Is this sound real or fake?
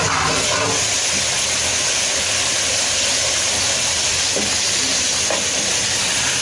real